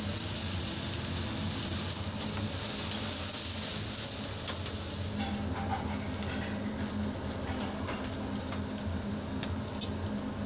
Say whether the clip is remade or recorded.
recorded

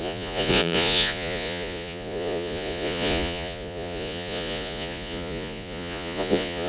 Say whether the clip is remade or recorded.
remade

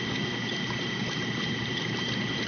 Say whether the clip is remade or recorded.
recorded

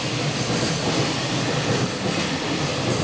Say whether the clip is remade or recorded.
recorded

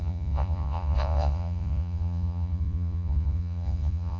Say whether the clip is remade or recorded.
remade